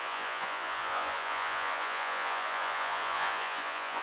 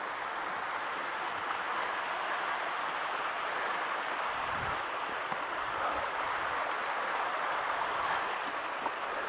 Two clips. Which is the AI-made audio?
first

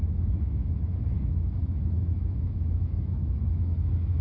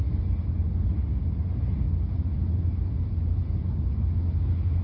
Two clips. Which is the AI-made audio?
first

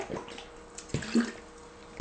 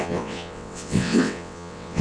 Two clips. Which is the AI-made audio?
second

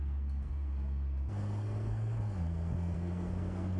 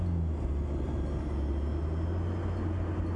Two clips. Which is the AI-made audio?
first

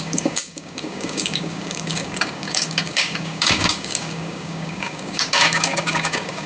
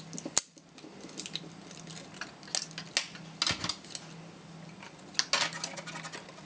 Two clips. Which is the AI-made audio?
first